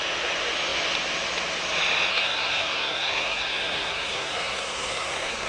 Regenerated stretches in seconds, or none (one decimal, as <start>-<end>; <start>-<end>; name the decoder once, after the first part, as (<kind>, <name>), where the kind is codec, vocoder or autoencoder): 2.1-5.5 (codec, SNAC)